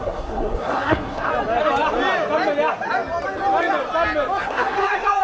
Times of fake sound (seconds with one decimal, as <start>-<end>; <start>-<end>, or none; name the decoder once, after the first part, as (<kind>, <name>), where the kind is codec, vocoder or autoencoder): 0.0-1.3 (codec, SNAC); 4.4-5.2